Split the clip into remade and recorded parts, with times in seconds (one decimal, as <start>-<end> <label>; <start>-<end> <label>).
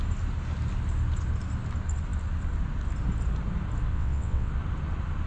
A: 0.0-3.9 recorded; 3.9-4.5 remade; 4.5-5.3 recorded